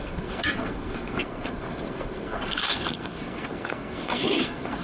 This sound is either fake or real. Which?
fake